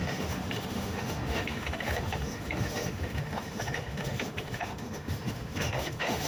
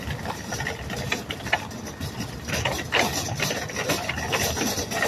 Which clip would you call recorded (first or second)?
second